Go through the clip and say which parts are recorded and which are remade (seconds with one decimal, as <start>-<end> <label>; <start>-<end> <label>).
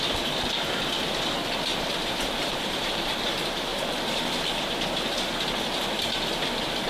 0.0-1.7 recorded; 1.7-3.3 remade; 3.3-3.7 recorded; 3.7-4.7 remade; 4.7-6.9 recorded